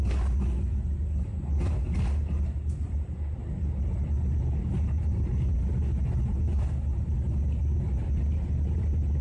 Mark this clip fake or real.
real